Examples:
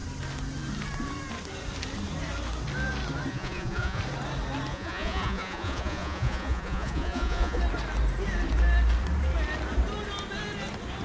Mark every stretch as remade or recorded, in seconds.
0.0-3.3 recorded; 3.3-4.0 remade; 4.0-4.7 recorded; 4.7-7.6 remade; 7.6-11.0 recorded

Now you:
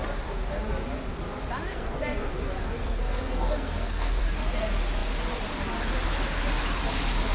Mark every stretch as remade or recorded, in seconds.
0.0-1.7 recorded; 1.7-2.3 remade; 2.3-2.8 recorded; 2.8-4.2 remade; 4.2-7.3 recorded